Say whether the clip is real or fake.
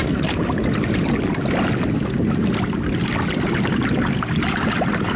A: real